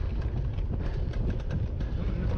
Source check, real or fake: real